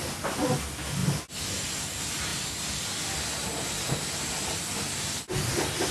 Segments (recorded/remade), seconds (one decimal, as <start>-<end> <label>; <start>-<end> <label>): 0.0-5.9 recorded